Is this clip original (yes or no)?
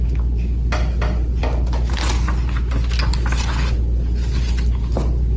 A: yes